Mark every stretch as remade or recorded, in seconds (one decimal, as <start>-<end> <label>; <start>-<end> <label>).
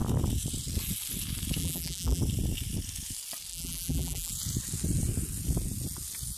0.0-1.6 recorded; 1.6-2.2 remade; 2.2-3.5 recorded; 3.5-4.3 remade; 4.3-6.4 recorded